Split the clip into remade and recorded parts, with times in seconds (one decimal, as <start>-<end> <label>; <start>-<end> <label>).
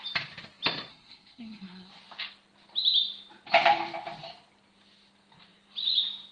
0.0-0.9 recorded; 0.9-1.9 remade; 1.9-6.3 recorded